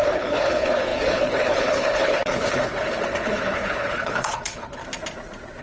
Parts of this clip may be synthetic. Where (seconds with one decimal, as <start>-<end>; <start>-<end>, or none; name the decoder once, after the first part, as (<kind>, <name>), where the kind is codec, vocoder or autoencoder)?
0.0-4.8 (codec, HILCodec)